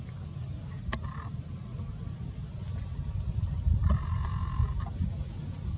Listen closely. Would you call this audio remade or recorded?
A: recorded